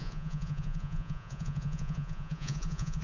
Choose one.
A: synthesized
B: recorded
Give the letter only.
A